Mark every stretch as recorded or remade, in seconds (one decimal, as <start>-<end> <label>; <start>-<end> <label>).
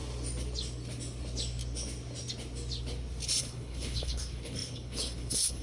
0.0-3.4 recorded; 3.4-5.6 remade